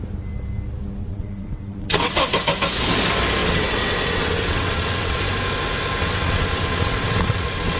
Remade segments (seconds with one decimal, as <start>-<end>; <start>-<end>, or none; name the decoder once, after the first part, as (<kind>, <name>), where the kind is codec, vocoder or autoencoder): 1.0-2.3 (vocoder, WaveNeXt); 3.4-5.2; 6.0-7.8